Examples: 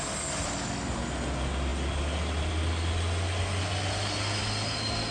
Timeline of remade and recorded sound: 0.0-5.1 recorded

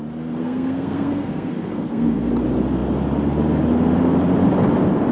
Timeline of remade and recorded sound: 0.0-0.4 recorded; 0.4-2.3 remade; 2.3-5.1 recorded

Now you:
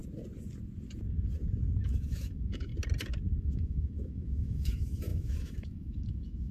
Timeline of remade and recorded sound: 0.0-1.8 recorded; 1.8-2.7 remade; 2.7-3.4 recorded; 3.4-6.5 remade

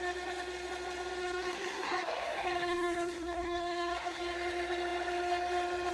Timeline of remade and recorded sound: 0.0-1.2 recorded; 1.2-4.2 remade; 4.2-5.9 recorded